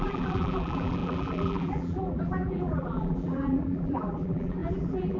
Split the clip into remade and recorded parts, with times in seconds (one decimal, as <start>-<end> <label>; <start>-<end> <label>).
0.0-5.2 remade